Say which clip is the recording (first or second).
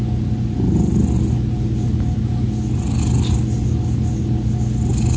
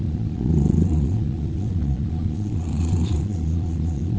first